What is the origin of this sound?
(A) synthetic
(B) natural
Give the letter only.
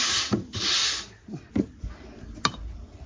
B